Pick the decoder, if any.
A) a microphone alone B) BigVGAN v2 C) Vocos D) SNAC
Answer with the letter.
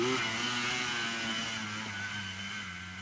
A